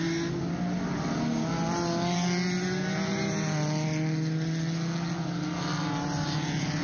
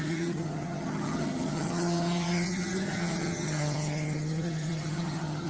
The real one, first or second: first